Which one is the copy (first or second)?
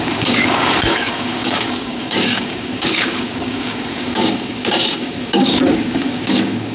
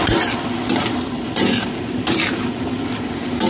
first